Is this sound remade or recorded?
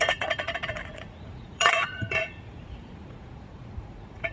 remade